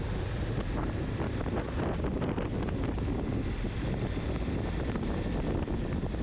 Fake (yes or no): no